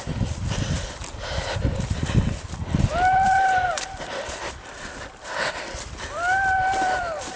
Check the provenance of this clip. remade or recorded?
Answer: remade